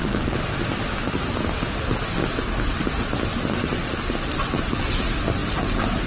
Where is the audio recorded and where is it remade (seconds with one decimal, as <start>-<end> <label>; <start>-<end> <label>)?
0.0-6.1 recorded